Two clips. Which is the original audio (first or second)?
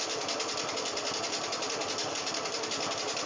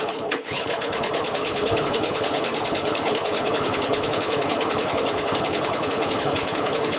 first